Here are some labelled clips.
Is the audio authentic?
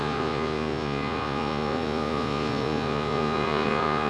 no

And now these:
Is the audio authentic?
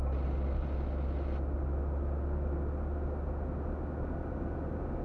yes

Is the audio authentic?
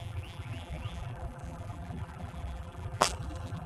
no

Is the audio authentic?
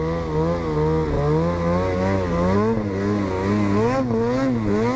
yes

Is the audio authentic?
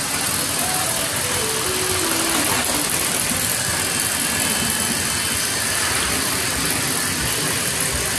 yes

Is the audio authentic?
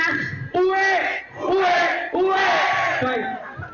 yes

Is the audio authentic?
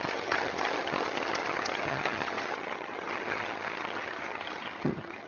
no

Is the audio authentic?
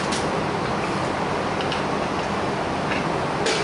yes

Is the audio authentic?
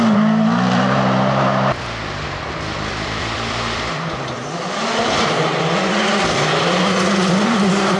yes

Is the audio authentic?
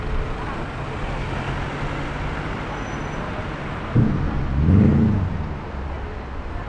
yes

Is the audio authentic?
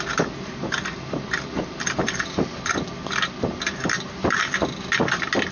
yes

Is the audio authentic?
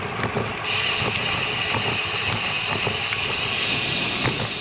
yes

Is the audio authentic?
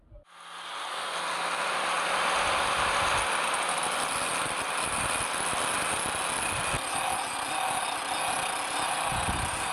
yes